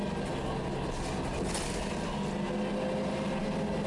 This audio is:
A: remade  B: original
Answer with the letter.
B